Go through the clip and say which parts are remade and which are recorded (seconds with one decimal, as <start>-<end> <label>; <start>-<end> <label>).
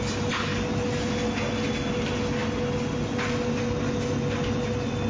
0.0-5.1 recorded